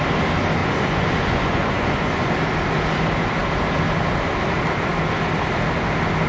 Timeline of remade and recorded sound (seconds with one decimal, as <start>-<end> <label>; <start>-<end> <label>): 0.0-0.6 recorded; 0.6-2.3 remade; 2.3-6.3 recorded